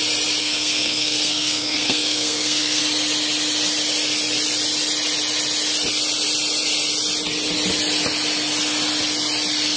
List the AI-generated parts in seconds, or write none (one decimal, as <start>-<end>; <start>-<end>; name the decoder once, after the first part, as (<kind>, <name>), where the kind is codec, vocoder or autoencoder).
0.4-2.8 (codec, SNAC)